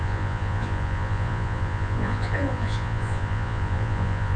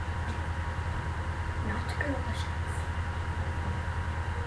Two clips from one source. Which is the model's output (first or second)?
first